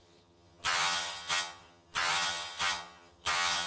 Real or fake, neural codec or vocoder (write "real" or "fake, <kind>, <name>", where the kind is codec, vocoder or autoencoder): fake, vocoder, HiFi-GAN